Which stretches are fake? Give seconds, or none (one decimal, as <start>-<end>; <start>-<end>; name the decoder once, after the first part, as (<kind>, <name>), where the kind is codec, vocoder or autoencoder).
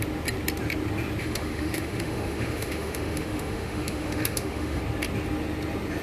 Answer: 1.2-4.8 (autoencoder, DAC-VAE)